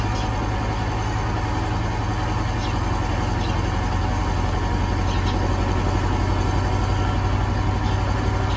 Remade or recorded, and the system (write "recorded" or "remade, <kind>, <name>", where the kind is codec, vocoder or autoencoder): recorded